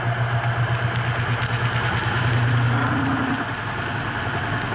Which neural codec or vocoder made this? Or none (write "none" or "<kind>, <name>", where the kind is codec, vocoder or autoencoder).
none